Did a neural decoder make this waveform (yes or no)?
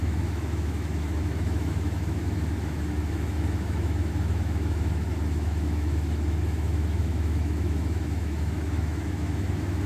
yes